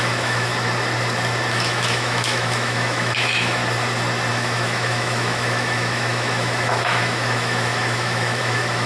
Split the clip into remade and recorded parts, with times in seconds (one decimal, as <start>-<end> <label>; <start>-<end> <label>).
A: 0.0-0.5 remade; 0.5-1.5 recorded; 1.5-3.6 remade; 3.6-4.3 recorded; 4.3-8.9 remade